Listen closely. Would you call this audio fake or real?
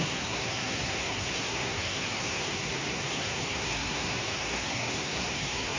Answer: fake